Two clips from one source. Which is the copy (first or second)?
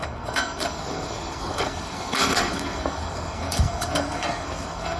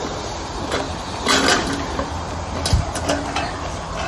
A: first